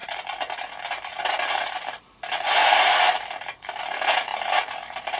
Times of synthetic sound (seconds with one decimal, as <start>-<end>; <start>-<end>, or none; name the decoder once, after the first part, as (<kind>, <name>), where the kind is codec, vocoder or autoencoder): 0.0-2.0 (vocoder, BigVGAN v2); 2.6-3.8; 4.3-5.2